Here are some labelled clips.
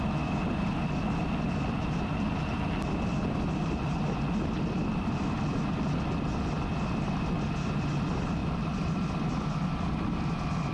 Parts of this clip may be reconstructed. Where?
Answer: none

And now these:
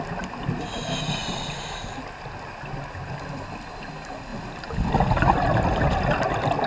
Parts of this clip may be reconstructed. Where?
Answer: none